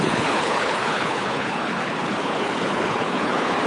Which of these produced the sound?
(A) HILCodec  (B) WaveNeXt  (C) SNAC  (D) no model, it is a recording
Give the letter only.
A